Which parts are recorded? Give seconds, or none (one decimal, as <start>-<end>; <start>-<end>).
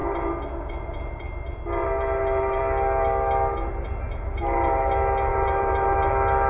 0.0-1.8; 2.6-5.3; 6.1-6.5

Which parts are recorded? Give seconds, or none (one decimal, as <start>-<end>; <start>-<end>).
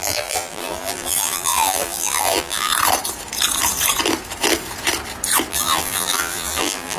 2.7-5.5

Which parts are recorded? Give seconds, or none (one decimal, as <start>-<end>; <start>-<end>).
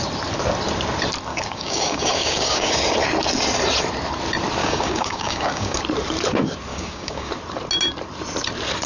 0.0-1.3; 2.8-4.6; 5.8-6.7; 7.3-8.9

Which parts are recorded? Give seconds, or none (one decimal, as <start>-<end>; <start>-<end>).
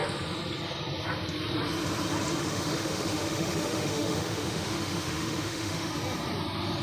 0.0-2.4; 5.9-6.8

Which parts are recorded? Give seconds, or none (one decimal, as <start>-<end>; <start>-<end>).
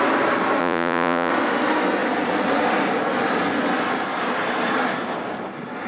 0.0-0.6; 1.3-5.9